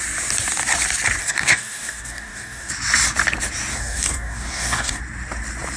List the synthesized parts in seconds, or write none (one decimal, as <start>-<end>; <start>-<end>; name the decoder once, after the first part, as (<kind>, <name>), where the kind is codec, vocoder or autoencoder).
1.2-2.7 (codec, DAC); 3.7-5.0